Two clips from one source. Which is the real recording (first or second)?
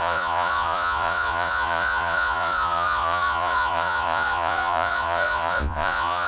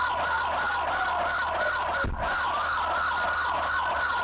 second